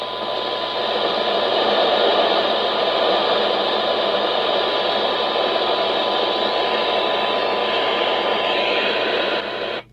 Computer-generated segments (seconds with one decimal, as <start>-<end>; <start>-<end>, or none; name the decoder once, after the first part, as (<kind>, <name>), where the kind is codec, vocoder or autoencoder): 1.5-6.0 (vocoder, BigVGAN v2); 7.6-9.4